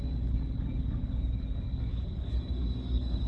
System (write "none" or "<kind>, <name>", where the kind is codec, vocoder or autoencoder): codec, DAC